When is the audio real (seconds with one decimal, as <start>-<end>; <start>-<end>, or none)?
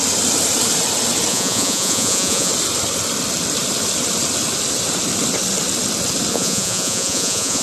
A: 0.0-1.3; 2.5-6.3